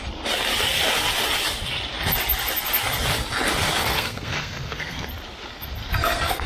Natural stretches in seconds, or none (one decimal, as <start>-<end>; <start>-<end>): 0.0-3.8; 5.1-5.8